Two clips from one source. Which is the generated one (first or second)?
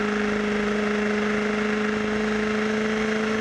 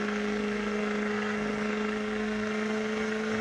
second